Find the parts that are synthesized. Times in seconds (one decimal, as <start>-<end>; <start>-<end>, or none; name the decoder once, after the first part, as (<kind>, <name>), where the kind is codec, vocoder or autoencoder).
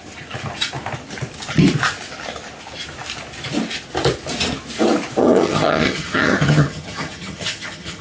5.2-8.0 (vocoder, HiFi-GAN)